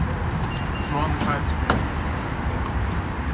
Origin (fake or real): fake